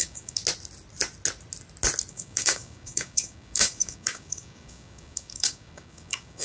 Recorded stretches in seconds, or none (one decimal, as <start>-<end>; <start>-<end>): 0.4-2.1